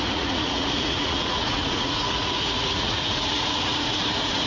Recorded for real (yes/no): no